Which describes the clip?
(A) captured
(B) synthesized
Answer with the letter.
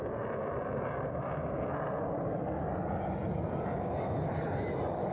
B